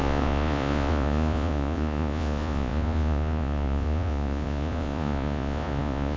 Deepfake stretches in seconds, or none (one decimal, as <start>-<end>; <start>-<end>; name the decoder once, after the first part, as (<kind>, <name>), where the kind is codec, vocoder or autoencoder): 0.0-6.2 (vocoder, Vocos)